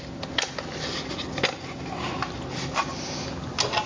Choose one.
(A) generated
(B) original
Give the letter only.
B